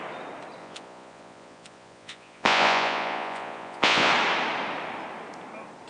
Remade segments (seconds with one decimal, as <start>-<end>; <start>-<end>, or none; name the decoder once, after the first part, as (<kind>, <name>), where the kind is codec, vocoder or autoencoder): 0.6-4.1 (vocoder, Vocos)